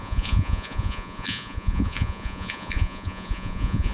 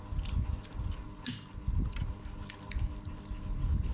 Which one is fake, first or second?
first